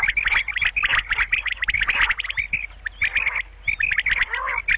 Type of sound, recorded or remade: recorded